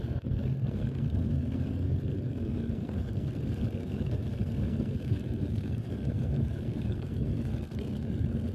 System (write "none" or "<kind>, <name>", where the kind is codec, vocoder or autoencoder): codec, SNAC